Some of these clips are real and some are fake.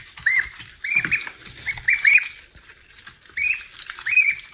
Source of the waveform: fake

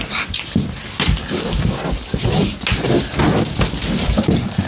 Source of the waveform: real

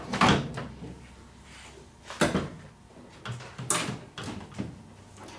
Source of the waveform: real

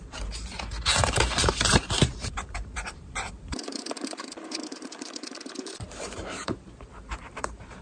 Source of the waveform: fake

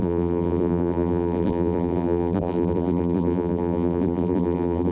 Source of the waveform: fake